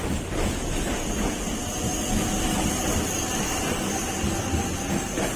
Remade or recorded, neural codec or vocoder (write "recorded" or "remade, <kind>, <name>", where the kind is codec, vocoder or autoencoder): recorded